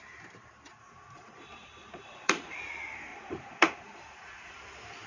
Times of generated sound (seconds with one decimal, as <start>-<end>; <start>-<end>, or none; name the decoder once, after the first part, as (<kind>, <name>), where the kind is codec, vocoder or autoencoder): 0.7-2.6 (vocoder, Vocos); 3.1-4.6